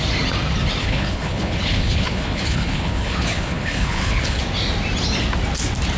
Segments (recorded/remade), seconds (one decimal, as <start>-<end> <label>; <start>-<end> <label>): 0.0-0.8 recorded; 0.8-4.4 remade; 4.4-6.0 recorded